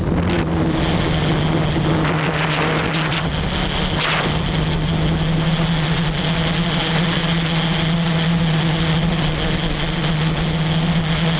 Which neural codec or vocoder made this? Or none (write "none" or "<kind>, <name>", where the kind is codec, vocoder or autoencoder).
none